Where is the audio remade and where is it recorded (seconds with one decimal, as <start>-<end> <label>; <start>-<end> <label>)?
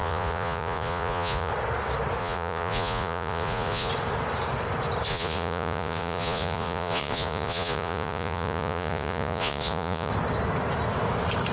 0.0-1.5 remade; 1.5-2.2 recorded; 2.2-3.9 remade; 3.9-5.1 recorded; 5.1-10.1 remade; 10.1-11.5 recorded